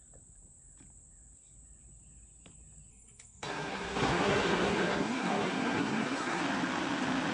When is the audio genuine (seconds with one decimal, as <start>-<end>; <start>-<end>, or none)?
0.0-2.9; 6.4-7.3